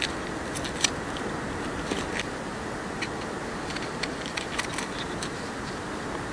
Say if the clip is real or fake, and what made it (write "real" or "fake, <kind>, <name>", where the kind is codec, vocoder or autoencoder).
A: real